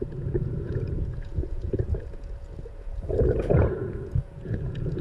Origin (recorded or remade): remade